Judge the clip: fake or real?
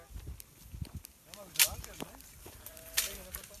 real